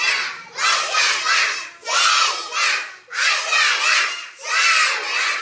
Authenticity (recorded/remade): recorded